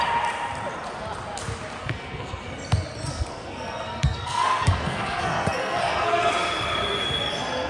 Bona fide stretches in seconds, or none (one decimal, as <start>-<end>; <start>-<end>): 0.0-1.8; 2.5-3.1; 6.3-7.7